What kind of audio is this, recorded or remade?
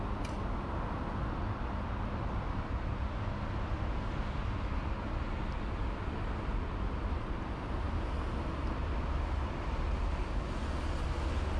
recorded